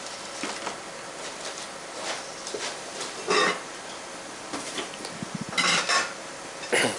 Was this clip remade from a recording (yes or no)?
no